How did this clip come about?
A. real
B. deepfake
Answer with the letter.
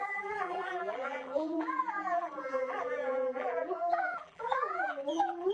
B